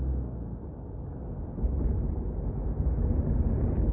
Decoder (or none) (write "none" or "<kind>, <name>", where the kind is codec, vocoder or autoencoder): none